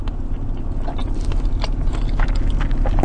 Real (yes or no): yes